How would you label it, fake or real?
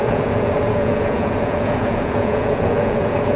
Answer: fake